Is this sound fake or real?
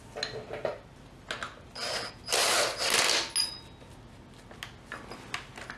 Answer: real